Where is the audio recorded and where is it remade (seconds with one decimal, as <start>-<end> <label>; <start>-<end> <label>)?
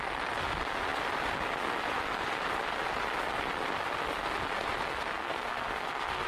0.0-4.9 recorded; 4.9-6.3 remade